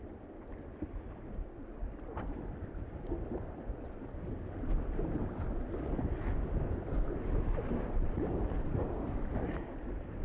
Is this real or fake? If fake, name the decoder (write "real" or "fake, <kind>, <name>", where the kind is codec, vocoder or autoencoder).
real